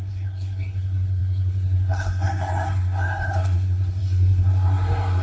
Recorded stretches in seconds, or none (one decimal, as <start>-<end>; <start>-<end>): none